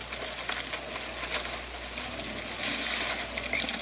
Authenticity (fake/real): real